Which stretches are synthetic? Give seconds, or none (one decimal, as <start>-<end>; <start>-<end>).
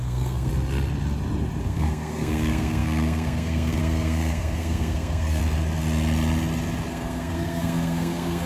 0.0-0.5; 1.6-5.4; 6.9-8.5